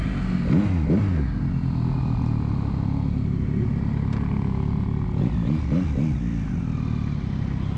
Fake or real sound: real